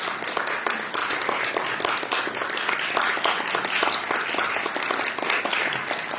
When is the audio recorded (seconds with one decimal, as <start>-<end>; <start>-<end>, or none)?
0.0-6.2